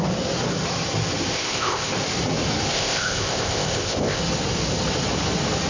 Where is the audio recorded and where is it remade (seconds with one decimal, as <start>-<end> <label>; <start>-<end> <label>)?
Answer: 0.0-1.3 recorded; 1.3-1.9 remade; 1.9-2.7 recorded; 2.7-4.2 remade; 4.2-5.7 recorded